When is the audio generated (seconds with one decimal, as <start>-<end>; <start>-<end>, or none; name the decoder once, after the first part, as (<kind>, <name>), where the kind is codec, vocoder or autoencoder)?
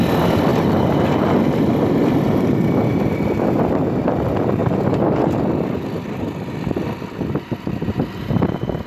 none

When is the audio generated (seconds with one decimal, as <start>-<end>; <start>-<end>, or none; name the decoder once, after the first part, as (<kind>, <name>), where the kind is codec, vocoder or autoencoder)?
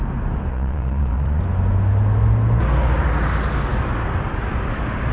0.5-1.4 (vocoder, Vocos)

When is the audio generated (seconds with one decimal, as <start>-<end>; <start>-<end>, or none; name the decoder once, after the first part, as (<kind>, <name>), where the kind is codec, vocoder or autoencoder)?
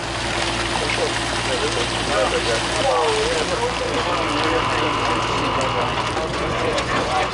6.3-7.3 (vocoder, Vocos)